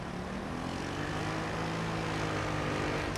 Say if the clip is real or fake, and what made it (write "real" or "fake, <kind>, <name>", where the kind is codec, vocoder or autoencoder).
real